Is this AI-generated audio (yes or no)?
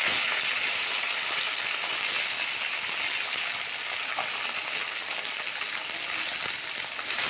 no